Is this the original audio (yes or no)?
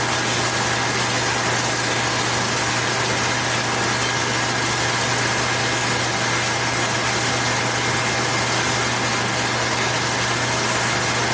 yes